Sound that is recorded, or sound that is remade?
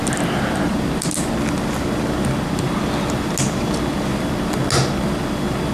recorded